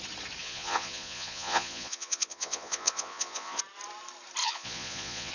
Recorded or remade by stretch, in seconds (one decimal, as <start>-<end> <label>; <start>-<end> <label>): 0.0-0.4 recorded; 0.4-3.6 remade; 3.6-4.4 recorded; 4.4-5.3 remade